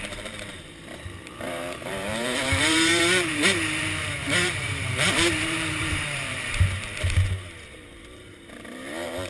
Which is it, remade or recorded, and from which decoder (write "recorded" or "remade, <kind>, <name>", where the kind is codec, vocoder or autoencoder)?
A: remade, vocoder, BigVGAN v2